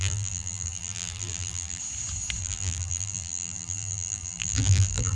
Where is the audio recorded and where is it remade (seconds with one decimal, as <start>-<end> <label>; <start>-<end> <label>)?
0.0-1.8 remade; 1.8-2.4 recorded; 2.4-5.2 remade